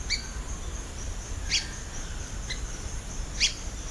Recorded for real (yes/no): yes